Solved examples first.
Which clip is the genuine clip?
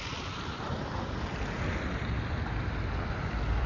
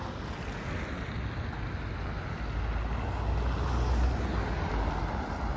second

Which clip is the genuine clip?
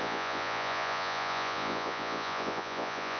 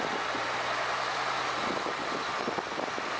second